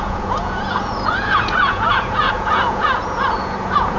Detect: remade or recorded remade